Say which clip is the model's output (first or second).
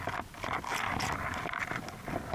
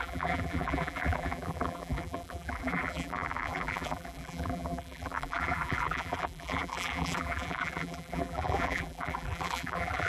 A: second